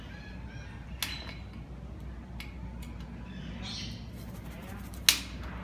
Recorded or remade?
recorded